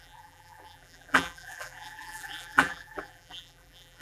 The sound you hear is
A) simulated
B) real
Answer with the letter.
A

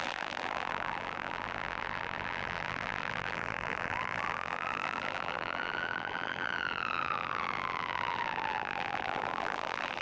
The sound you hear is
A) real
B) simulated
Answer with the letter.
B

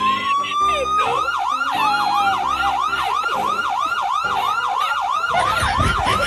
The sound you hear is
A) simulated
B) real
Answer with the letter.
B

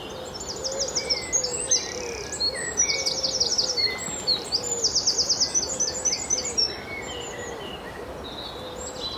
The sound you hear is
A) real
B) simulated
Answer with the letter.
A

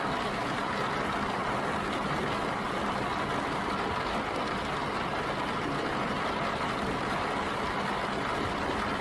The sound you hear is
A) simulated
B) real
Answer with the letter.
B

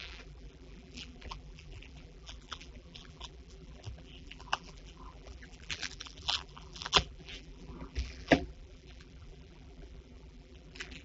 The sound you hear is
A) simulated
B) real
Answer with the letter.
A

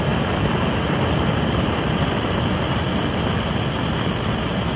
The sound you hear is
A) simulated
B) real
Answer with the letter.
B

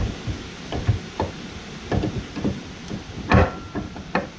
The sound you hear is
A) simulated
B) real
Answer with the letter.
B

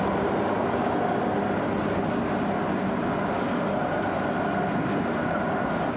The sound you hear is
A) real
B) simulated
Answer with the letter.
A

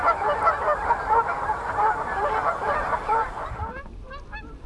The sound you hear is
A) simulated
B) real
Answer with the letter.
A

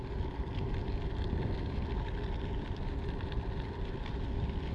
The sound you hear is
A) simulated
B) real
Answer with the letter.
B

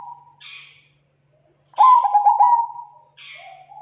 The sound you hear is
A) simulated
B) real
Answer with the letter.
B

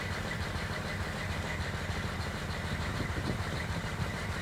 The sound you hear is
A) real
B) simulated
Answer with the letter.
B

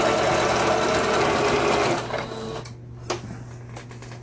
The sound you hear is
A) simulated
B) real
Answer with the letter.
B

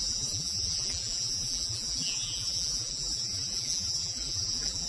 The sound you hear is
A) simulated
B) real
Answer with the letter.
A